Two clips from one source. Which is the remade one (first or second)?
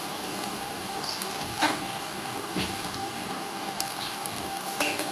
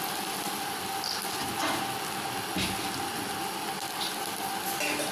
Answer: first